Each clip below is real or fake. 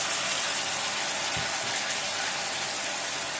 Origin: real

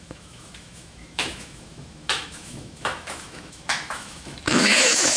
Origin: fake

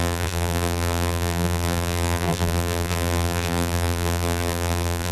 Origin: fake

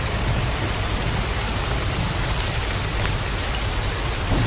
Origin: real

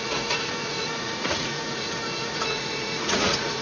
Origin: fake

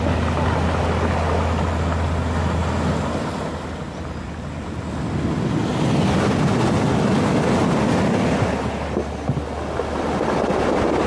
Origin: real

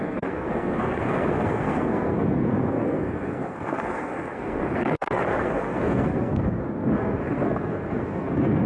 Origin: fake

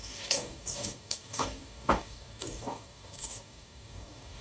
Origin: fake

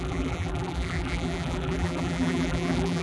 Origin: fake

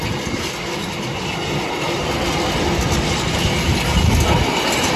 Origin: real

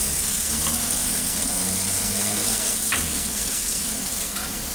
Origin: fake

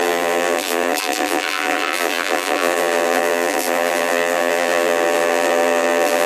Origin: fake